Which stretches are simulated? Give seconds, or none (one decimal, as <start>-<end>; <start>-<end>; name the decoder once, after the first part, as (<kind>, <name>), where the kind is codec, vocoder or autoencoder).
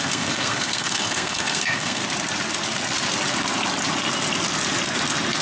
0.0-2.0 (codec, SNAC)